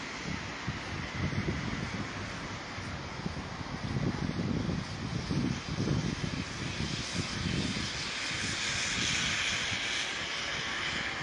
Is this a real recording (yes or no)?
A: yes